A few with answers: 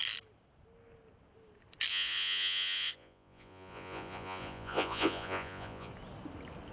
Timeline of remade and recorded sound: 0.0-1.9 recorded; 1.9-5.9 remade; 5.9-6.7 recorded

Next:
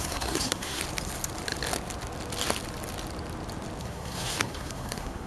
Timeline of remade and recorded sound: 0.0-0.8 remade; 0.8-3.8 recorded; 3.8-5.3 remade